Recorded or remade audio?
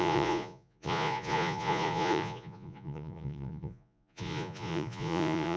remade